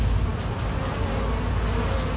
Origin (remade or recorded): recorded